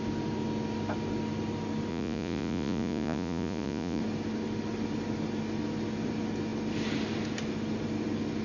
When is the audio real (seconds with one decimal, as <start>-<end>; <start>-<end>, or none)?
0.0-1.9; 4.0-8.4